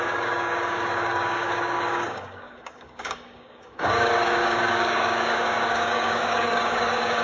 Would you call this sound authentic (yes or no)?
no